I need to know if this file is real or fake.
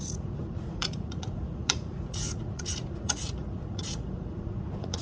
fake